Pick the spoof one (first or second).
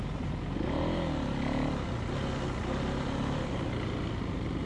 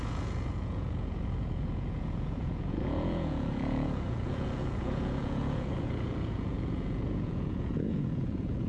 second